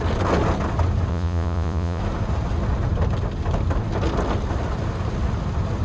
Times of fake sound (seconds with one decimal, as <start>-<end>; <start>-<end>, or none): 1.1-2.0